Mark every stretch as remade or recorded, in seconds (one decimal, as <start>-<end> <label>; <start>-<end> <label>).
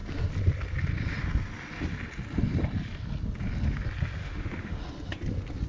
0.0-4.2 recorded; 4.2-4.8 remade; 4.8-5.7 recorded